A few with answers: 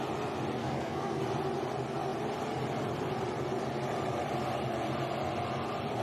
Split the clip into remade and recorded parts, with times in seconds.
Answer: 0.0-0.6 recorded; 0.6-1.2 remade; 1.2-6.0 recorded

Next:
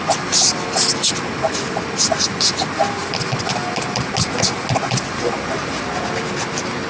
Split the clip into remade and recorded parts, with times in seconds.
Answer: 0.0-6.9 recorded

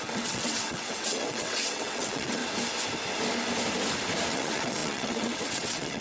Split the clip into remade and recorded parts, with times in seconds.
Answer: 0.0-2.4 remade; 2.4-4.3 recorded; 4.3-6.0 remade

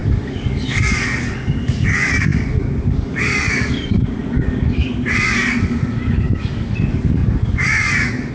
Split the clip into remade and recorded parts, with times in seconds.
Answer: 0.0-8.3 remade

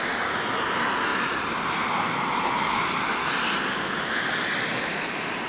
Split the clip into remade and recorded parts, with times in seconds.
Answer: 0.0-1.1 recorded; 1.1-4.1 remade; 4.1-5.5 recorded

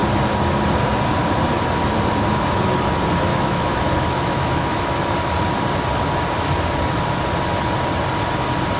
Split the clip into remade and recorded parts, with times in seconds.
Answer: 0.0-3.3 recorded; 3.3-5.0 remade; 5.0-8.8 recorded